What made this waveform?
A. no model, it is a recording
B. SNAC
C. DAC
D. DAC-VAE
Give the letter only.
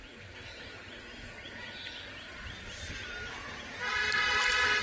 A